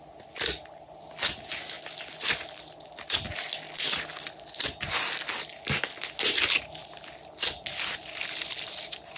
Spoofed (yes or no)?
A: no